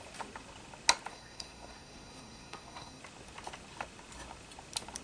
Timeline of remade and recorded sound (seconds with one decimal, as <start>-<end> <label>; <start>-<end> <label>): 0.0-1.1 recorded; 1.1-3.0 remade; 3.0-5.0 recorded